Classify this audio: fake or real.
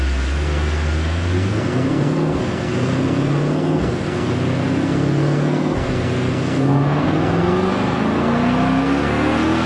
fake